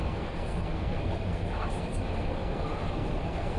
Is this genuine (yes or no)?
no